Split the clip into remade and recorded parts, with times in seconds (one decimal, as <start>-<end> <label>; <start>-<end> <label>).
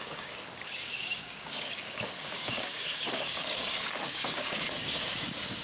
0.0-5.6 remade